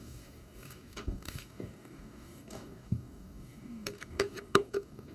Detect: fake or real fake